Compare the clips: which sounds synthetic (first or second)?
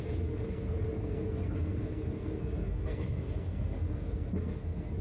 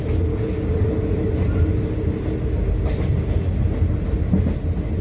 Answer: first